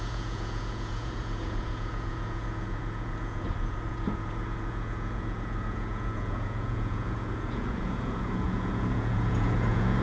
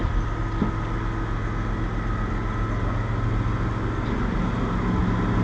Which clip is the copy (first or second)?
first